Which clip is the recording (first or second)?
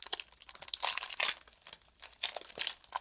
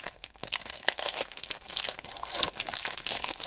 first